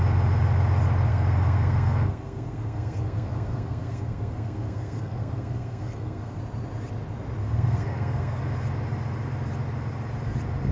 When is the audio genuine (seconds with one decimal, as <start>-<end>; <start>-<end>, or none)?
0.0-1.1; 6.4-7.4; 8.4-10.7